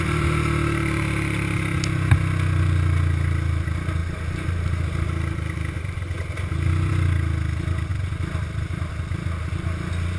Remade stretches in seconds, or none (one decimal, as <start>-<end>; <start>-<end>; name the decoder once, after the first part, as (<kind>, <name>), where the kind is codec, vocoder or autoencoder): none